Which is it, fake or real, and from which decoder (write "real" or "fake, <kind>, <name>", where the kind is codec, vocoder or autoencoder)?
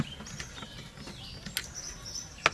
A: real